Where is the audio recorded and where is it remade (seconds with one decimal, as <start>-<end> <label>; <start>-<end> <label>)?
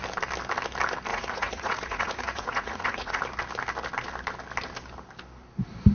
0.0-1.1 recorded; 1.1-3.2 remade; 3.2-5.9 recorded